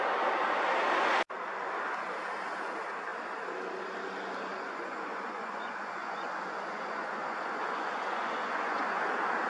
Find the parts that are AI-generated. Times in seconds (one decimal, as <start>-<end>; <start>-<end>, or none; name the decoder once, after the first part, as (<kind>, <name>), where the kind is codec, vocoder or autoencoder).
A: 4.5-9.1 (vocoder, Vocos)